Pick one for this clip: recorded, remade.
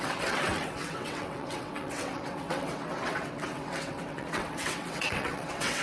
remade